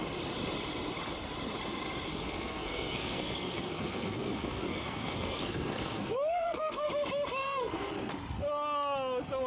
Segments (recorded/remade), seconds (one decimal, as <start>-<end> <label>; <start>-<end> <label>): 0.0-2.1 recorded; 2.1-6.9 remade; 6.9-7.4 recorded; 7.4-7.9 remade; 7.9-9.5 recorded